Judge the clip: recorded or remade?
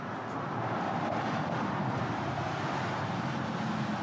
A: recorded